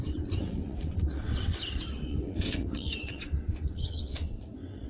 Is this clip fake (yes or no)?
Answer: yes